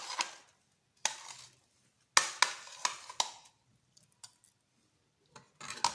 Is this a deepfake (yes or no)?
no